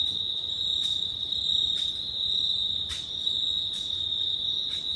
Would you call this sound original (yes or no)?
yes